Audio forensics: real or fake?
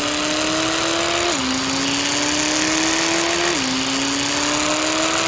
real